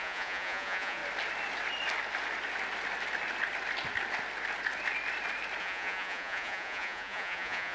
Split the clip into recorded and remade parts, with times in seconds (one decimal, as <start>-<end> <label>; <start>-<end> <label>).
0.0-1.0 remade; 1.0-5.6 recorded; 5.6-7.7 remade